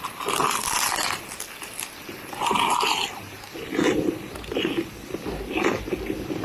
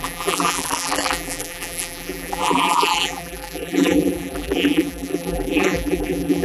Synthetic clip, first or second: second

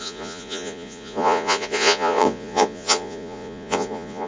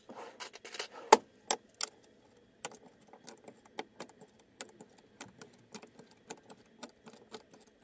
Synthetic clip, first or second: first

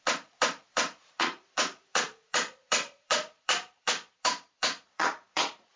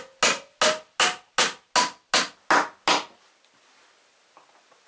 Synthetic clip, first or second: first